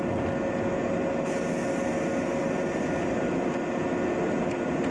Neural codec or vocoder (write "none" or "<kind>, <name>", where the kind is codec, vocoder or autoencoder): none